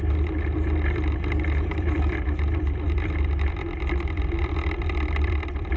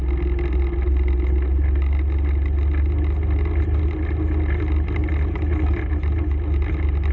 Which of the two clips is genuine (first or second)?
second